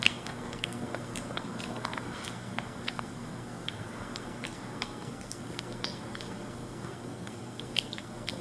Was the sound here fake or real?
fake